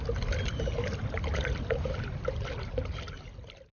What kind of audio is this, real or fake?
real